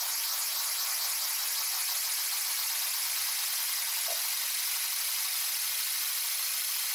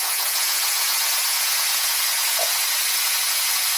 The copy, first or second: second